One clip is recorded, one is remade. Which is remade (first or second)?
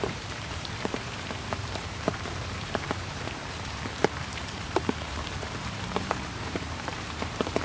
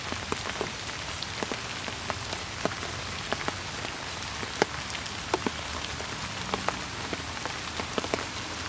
first